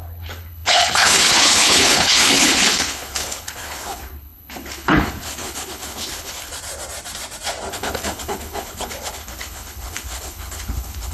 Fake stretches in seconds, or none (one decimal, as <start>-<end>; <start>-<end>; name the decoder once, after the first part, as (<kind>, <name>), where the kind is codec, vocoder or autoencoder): 0.0-6.5 (codec, HILCodec); 7.7-11.1